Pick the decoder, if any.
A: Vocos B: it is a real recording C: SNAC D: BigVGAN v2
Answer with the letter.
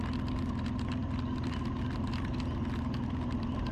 B